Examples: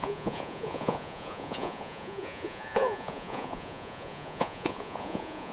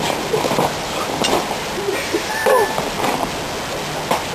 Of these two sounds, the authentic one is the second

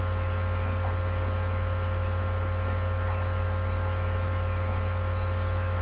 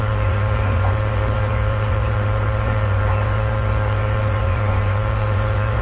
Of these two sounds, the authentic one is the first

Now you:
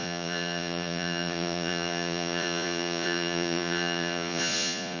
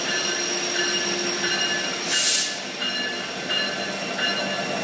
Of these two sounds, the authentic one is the second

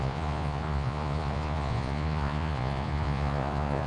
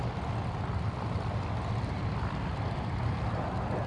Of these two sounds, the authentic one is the second